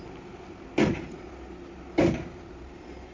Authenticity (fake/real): real